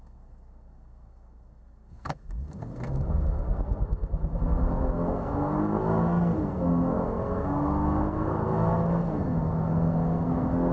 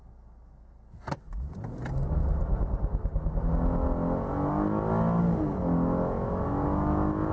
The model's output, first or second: first